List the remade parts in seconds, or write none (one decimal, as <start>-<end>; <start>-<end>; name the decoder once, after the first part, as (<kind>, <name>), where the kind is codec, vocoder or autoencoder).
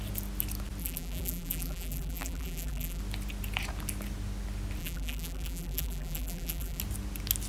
0.8-3.0 (vocoder, BigVGAN v2); 4.8-6.8